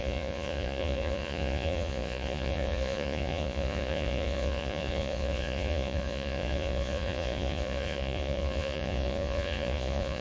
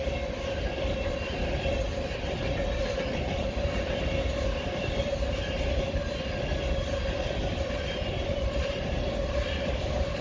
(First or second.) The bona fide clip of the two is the second